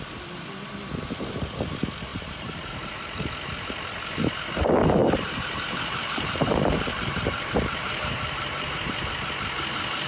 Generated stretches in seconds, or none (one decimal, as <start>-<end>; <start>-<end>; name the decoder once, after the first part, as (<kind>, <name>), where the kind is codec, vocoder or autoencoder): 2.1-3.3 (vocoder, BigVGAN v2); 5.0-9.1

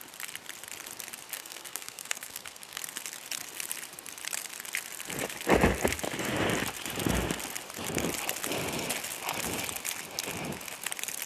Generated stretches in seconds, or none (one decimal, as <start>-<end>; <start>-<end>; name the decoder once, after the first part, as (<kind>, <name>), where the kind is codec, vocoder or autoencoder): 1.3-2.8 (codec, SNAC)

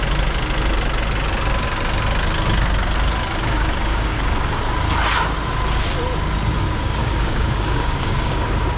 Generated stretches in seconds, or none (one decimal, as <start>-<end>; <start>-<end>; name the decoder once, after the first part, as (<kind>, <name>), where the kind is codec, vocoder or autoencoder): 3.4-4.4 (codec, DAC); 7.0-8.8